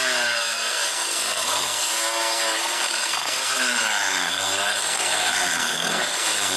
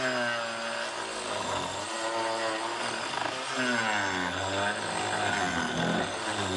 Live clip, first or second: second